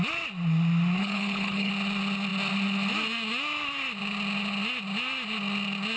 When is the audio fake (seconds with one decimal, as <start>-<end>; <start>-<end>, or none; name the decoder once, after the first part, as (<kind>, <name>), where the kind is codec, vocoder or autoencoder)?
1.0-1.7 (codec, HILCodec)